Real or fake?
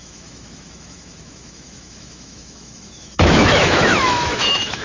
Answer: fake